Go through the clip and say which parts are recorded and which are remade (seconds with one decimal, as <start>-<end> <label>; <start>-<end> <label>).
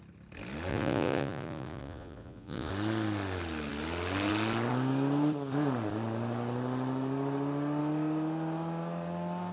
0.0-0.7 recorded; 0.7-2.7 remade; 2.7-9.5 recorded